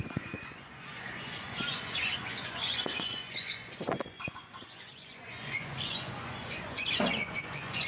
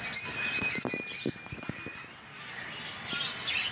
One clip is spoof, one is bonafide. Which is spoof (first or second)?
first